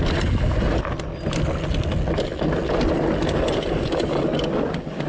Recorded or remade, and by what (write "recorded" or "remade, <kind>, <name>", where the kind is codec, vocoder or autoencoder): recorded